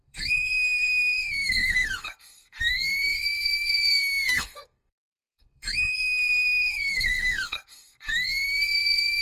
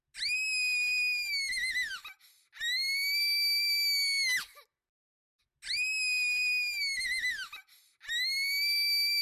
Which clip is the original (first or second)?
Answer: second